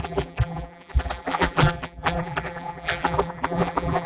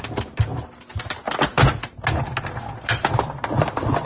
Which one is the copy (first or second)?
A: first